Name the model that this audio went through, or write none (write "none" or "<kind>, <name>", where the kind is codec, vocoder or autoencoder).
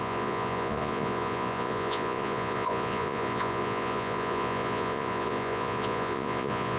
vocoder, Vocos